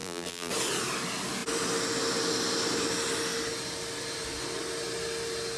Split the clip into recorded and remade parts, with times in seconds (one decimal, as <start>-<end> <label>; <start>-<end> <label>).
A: 0.0-0.5 remade; 0.5-5.6 recorded